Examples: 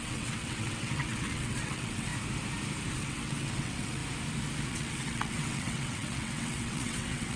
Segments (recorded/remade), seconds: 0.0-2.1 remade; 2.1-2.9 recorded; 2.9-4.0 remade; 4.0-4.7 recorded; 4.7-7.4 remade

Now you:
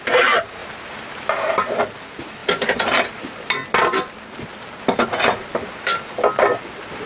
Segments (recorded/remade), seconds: 0.0-0.6 recorded; 0.6-1.8 remade; 1.8-2.4 recorded; 2.4-3.5 remade; 3.5-7.1 recorded

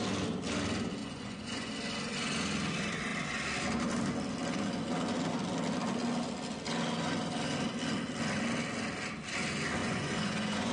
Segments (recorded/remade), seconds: 0.0-1.0 recorded; 1.0-1.7 remade; 1.7-9.8 recorded; 9.8-10.7 remade

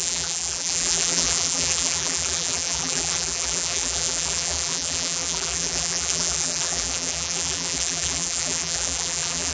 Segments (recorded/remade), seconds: 0.0-9.5 remade